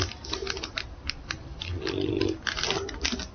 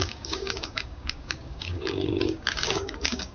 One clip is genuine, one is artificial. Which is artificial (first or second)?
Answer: second